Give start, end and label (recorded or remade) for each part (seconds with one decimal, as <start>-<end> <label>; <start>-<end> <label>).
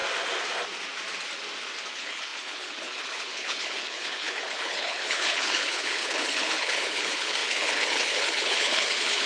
0.0-1.9 recorded; 1.9-9.3 remade